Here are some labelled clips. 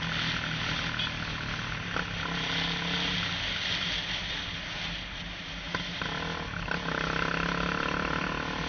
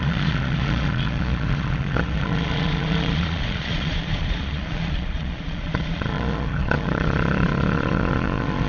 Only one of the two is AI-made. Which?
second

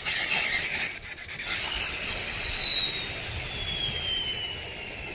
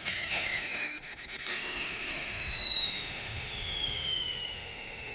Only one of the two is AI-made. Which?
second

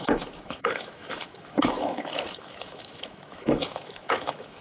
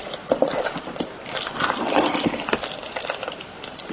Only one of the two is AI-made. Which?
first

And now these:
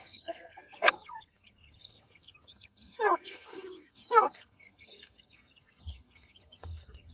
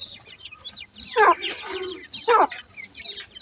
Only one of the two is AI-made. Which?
first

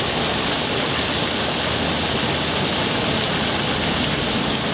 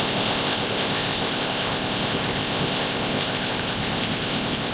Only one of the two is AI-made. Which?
second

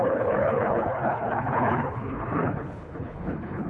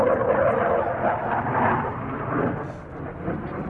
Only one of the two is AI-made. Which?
first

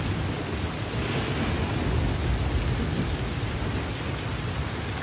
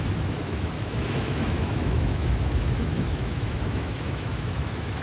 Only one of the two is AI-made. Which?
second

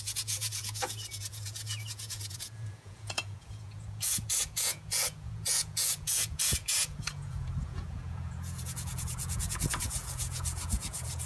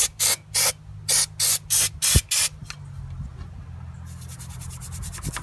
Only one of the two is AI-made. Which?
first